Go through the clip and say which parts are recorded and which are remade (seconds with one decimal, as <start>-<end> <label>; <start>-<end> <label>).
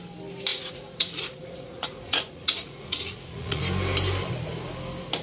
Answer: 0.0-0.5 recorded; 0.5-3.6 remade; 3.6-5.2 recorded